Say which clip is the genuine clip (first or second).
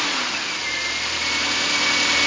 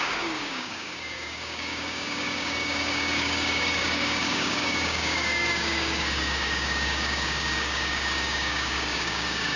first